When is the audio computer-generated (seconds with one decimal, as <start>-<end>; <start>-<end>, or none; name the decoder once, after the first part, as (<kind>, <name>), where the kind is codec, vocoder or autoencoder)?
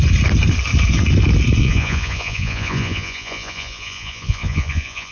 1.6-5.1 (vocoder, Vocos)